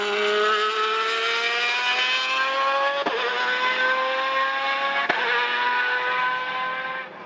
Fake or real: real